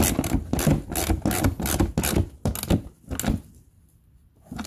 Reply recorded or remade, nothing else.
recorded